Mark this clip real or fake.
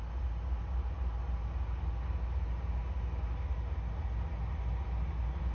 real